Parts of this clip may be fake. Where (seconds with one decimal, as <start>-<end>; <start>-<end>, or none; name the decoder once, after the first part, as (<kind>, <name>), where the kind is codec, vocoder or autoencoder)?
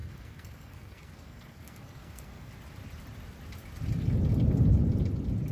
0.0-2.5 (codec, SNAC)